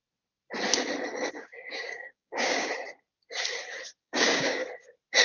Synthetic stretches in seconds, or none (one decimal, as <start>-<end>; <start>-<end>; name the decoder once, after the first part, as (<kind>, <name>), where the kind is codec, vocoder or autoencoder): 1.3-2.7 (codec, DAC); 4.0-4.6